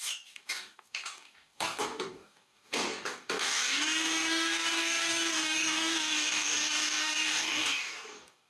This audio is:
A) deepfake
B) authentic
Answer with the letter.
A